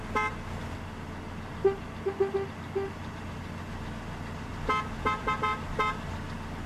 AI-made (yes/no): no